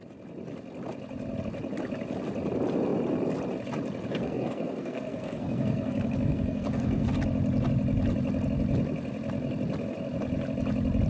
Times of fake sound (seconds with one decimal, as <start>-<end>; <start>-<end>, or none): 4.1-7.1